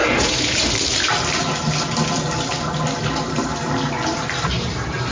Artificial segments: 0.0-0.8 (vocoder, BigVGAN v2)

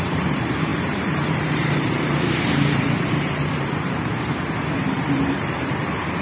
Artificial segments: 0.0-4.1 (vocoder, BigVGAN v2); 4.7-6.2

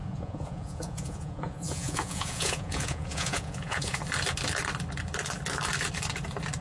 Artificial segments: 0.0-4.0 (vocoder, Vocos)

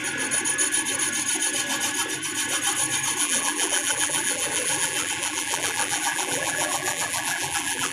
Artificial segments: 3.2-7.9 (vocoder, BigVGAN v2)